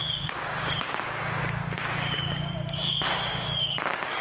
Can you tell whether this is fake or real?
fake